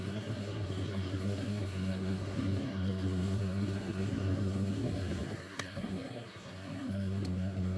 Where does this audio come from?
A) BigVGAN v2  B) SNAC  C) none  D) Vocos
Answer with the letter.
B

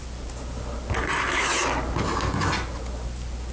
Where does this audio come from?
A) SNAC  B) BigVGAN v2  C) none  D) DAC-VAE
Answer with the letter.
C